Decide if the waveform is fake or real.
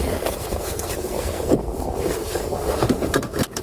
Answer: fake